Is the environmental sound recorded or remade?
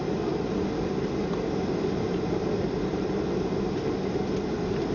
recorded